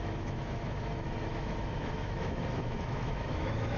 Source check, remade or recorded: remade